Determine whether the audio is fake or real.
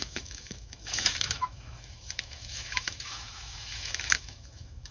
fake